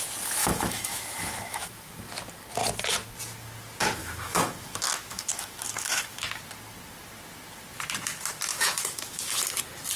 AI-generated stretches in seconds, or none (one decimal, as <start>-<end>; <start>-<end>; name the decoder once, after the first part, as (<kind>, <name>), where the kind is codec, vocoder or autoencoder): 0.4-2.0 (autoencoder, DAC-VAE); 4.0-6.4; 8.5-9.4